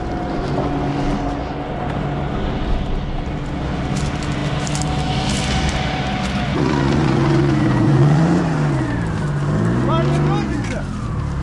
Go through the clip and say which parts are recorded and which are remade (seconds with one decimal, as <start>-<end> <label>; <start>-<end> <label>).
0.0-6.5 recorded; 6.5-8.4 remade; 8.4-11.4 recorded